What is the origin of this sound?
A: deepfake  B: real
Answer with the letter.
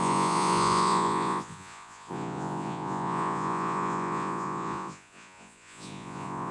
A